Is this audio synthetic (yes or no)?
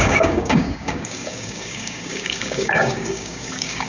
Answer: yes